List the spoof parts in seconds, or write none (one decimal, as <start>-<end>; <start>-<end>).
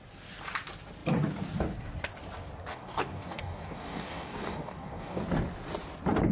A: 2.7-5.2